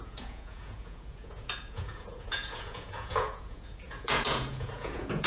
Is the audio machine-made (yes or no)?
yes